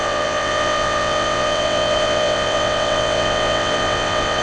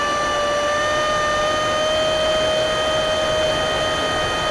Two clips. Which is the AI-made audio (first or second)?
first